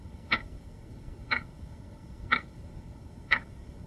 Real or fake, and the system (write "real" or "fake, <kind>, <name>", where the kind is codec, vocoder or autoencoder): fake, codec, SNAC